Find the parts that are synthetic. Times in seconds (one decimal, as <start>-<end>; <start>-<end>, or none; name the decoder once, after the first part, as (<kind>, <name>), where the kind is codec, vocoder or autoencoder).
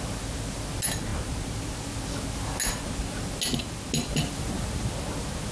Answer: none